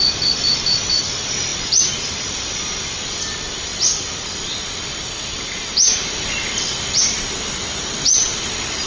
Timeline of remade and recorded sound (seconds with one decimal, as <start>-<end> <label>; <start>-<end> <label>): 0.0-8.9 recorded